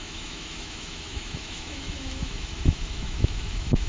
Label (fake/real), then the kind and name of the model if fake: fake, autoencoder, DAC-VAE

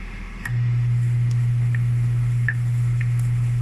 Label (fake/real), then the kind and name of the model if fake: fake, autoencoder, DAC-VAE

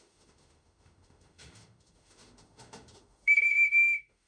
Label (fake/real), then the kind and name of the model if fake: fake, autoencoder, DAC-VAE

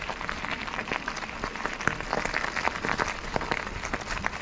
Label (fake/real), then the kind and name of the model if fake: real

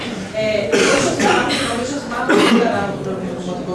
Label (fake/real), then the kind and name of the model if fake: real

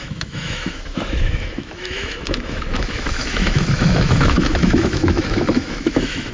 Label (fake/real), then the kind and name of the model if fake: fake, autoencoder, DAC-VAE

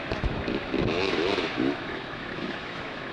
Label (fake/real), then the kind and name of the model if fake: fake, autoencoder, DAC-VAE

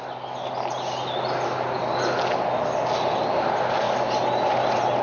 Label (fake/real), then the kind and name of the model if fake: real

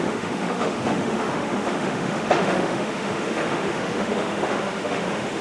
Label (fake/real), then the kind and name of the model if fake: fake, autoencoder, DAC-VAE